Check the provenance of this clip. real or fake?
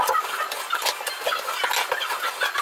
real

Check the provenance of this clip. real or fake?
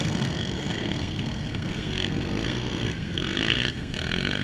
fake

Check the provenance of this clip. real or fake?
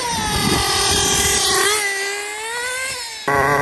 real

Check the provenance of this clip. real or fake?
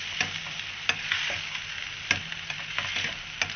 real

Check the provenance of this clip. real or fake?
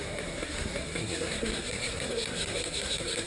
fake